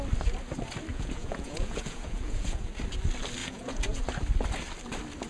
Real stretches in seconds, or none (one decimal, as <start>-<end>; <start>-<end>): 0.0-0.9; 2.7-3.4; 4.0-5.3